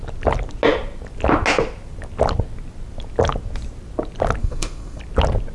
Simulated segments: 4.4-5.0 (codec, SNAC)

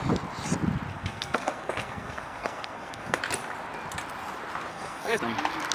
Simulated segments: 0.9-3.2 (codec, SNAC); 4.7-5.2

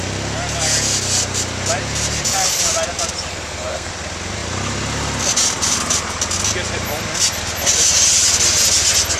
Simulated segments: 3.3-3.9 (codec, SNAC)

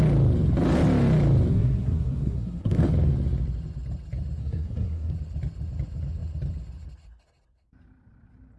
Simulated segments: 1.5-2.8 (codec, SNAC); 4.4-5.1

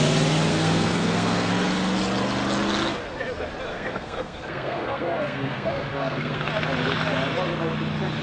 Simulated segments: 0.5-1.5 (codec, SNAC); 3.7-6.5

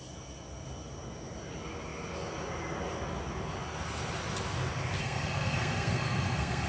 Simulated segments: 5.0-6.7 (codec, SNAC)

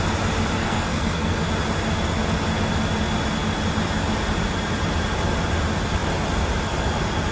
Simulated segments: 0.6-1.5 (codec, SNAC)

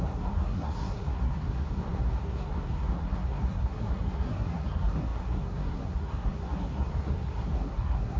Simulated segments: 0.0-8.2 (codec, SNAC)